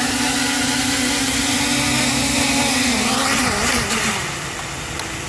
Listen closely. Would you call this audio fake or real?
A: real